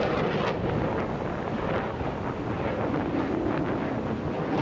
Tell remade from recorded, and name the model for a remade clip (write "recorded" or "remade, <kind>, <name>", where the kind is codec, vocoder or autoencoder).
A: recorded